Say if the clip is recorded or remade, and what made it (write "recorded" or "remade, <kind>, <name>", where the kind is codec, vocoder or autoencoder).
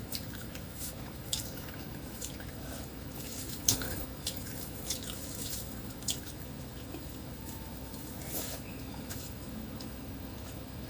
remade, autoencoder, DAC-VAE